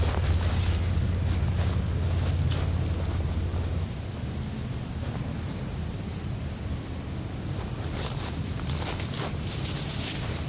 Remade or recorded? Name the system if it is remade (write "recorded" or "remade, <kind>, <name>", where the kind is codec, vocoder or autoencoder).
recorded